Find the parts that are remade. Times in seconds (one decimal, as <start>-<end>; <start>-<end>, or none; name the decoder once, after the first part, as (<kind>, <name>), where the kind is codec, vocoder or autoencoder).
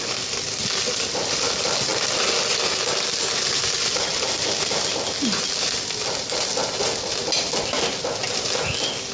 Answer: none